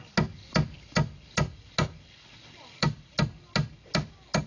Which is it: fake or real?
real